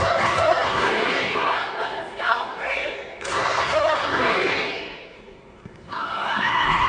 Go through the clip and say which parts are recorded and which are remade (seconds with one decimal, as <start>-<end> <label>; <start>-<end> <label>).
0.0-6.9 remade